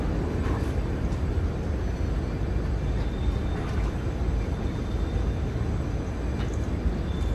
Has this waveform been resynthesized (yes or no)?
no